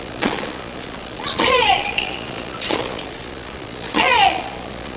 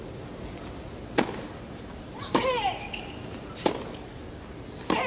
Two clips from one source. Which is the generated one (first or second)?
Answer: first